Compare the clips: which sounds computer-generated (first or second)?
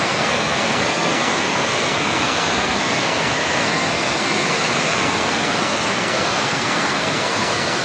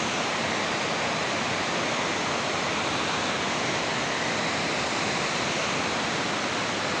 first